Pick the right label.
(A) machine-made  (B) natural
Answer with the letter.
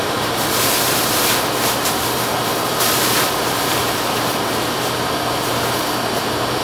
A